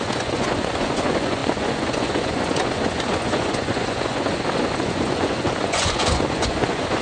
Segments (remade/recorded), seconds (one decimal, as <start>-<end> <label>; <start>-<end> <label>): 0.0-7.0 remade